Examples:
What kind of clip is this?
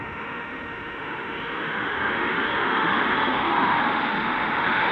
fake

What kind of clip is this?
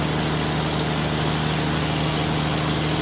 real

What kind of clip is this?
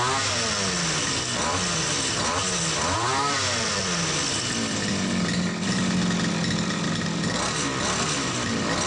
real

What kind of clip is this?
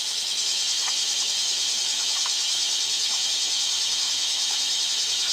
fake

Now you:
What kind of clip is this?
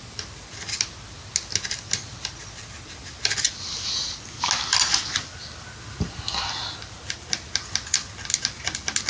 real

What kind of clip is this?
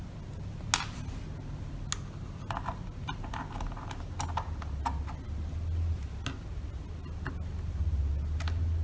real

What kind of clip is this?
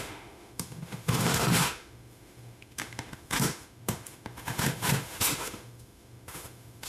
fake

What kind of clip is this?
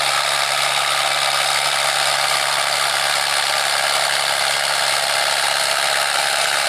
real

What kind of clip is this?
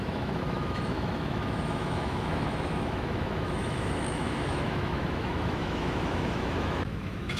fake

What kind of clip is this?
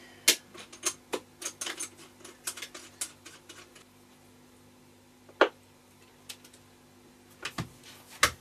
real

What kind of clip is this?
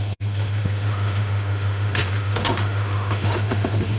fake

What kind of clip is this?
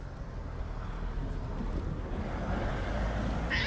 real